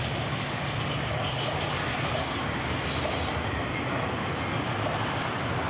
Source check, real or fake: real